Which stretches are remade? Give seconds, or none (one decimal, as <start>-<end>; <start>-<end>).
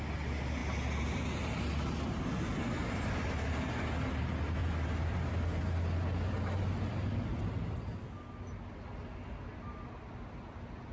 none